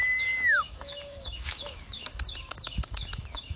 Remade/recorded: remade